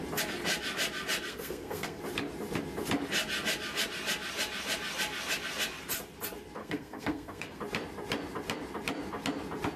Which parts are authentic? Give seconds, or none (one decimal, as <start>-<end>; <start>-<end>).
0.0-1.3; 2.0-6.6; 7.6-9.8